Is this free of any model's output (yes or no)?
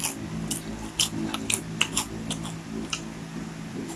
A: yes